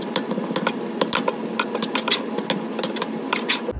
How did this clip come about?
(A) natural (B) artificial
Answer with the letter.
A